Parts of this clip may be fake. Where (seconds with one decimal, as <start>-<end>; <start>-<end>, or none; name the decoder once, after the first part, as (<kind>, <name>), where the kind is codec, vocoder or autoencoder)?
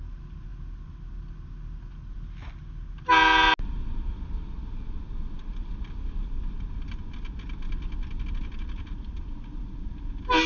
none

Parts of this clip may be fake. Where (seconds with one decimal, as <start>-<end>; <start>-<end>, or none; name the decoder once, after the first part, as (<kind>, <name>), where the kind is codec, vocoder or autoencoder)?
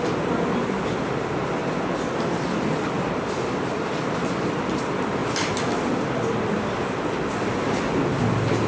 none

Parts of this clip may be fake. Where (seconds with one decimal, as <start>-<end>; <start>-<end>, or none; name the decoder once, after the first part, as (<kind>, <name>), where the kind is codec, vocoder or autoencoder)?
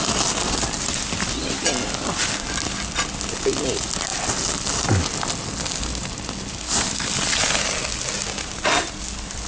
none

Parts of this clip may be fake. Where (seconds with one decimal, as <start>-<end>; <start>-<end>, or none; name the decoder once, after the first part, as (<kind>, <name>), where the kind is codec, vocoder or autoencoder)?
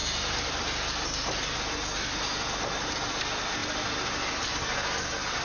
none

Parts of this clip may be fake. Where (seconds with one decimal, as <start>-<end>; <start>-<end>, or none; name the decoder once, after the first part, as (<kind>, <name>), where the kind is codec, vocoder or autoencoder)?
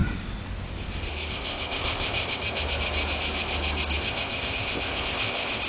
1.3-2.6 (codec, ZipCodec); 4.0-5.7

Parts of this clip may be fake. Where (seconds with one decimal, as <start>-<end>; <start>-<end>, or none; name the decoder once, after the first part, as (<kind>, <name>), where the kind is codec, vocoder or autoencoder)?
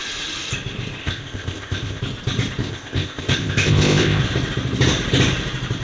1.0-2.0 (codec, ZipCodec); 2.6-4.2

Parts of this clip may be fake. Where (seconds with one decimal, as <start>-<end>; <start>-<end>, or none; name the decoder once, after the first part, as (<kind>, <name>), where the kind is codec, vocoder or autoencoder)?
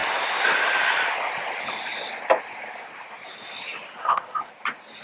4.0-4.5 (codec, ZipCodec)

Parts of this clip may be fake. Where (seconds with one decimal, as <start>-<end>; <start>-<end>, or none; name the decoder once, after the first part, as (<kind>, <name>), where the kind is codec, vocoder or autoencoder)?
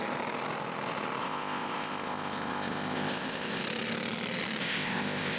1.2-3.6 (codec, ZipCodec); 4.6-5.4